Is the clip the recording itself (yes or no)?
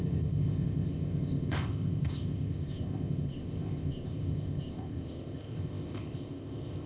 no